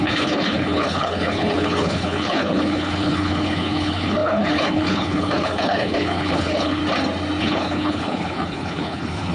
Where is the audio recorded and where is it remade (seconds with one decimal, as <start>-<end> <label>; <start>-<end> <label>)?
0.0-6.8 remade; 6.8-7.4 recorded; 7.4-9.3 remade